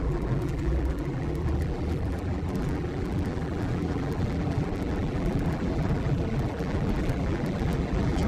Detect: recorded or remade remade